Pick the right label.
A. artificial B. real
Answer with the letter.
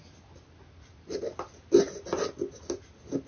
B